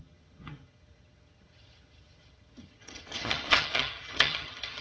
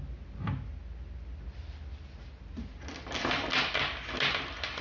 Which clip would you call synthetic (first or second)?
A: first